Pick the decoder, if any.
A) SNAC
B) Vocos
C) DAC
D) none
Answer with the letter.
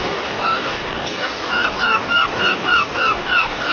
C